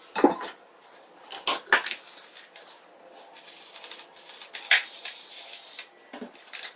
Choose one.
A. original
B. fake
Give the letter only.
A